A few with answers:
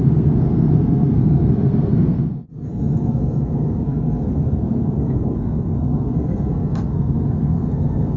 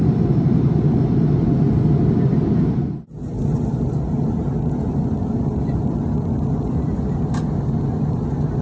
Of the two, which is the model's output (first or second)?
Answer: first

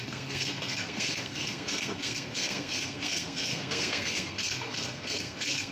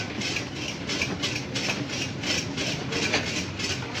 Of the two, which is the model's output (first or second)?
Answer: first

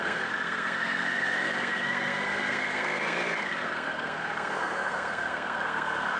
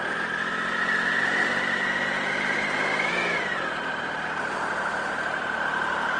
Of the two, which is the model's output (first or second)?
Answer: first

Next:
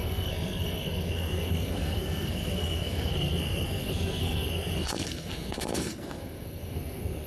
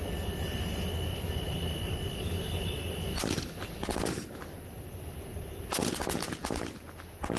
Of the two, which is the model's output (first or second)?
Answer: first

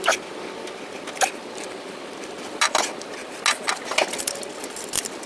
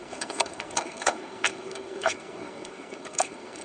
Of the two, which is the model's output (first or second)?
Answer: second